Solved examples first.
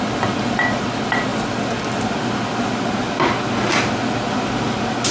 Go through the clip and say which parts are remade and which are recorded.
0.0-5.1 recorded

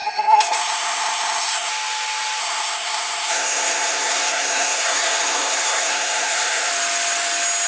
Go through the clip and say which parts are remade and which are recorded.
0.0-1.7 remade; 1.7-2.4 recorded; 2.4-6.7 remade; 6.7-7.7 recorded

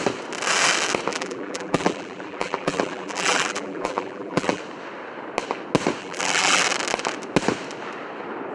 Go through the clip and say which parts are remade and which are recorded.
0.0-1.1 recorded; 1.1-4.6 remade; 4.6-6.0 recorded; 6.0-6.6 remade; 6.6-8.5 recorded

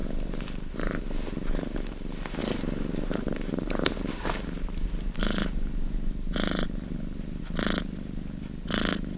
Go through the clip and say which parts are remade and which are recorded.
0.0-1.0 remade; 1.0-2.4 recorded; 2.4-7.4 remade; 7.4-9.2 recorded

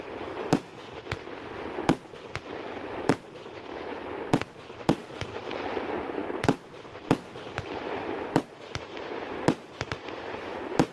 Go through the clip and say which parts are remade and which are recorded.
0.0-10.9 recorded